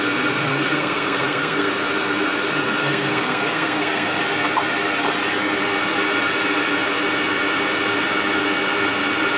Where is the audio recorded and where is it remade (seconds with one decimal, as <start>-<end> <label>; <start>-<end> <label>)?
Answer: 0.0-0.5 recorded; 0.5-1.7 remade; 1.7-2.8 recorded; 2.8-4.2 remade; 4.2-9.4 recorded